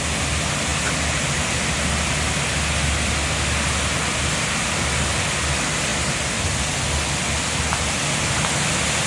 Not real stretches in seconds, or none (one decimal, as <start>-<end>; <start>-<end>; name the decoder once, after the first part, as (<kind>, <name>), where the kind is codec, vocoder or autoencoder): none